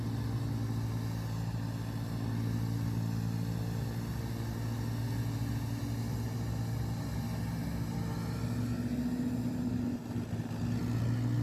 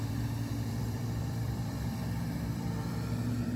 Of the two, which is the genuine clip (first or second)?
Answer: first